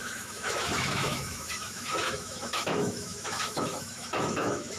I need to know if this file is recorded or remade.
remade